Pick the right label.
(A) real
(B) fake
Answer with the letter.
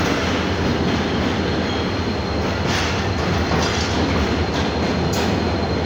A